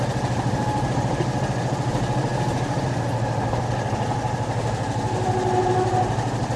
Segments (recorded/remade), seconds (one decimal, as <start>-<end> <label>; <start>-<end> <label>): 0.0-6.6 recorded